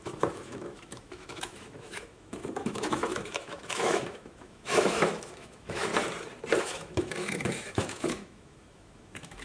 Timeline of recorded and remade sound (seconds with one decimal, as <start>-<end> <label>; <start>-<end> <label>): 0.0-5.9 remade; 5.9-6.6 recorded; 6.6-9.4 remade